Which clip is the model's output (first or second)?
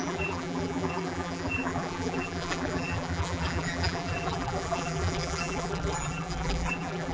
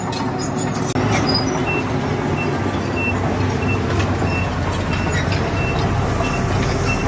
first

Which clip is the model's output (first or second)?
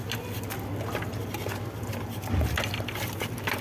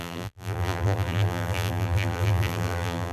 second